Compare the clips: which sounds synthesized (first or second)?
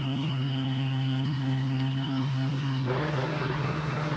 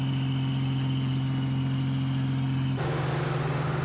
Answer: first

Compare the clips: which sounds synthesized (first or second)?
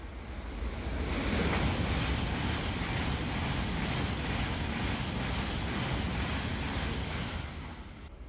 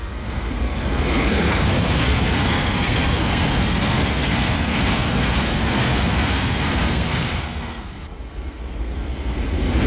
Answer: second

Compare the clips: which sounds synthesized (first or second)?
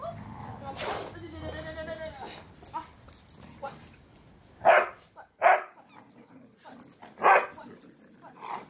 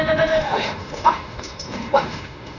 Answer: second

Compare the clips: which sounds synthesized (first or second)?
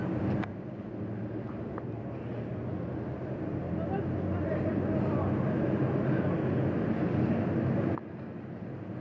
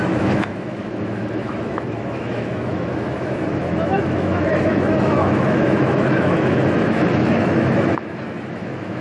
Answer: second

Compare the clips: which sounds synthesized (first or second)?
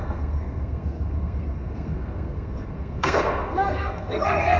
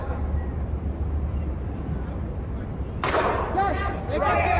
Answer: first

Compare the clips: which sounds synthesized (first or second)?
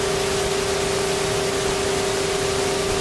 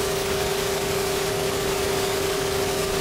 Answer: second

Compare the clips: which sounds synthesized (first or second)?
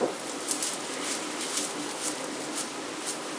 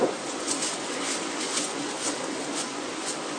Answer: second